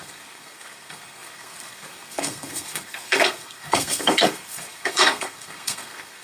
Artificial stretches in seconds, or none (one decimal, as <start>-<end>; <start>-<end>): 0.0-6.2

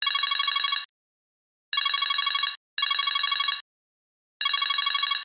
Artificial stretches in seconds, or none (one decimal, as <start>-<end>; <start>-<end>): none

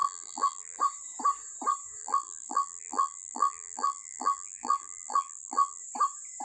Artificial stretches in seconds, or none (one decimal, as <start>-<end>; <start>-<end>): 0.0-0.8; 2.0-5.8